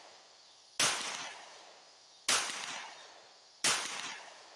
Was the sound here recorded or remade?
recorded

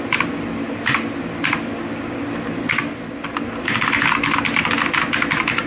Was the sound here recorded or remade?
recorded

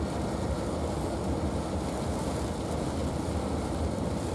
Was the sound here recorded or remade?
recorded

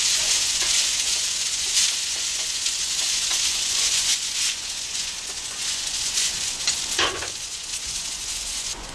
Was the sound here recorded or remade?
remade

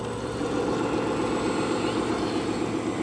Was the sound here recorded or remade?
recorded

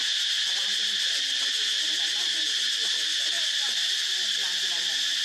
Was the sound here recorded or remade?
recorded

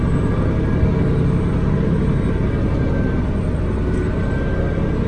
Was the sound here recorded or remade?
recorded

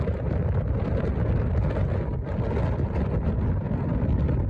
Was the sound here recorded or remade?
recorded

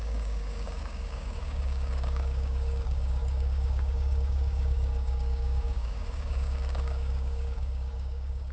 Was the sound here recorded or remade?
remade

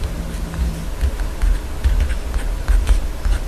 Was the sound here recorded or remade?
recorded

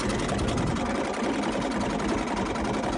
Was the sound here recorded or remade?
recorded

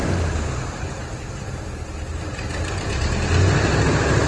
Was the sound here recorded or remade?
recorded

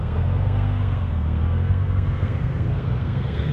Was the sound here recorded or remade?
remade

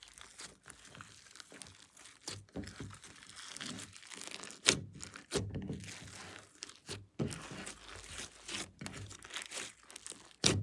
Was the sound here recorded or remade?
recorded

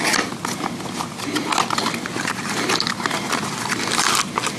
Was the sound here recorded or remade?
recorded